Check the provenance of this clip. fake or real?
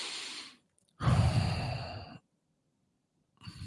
fake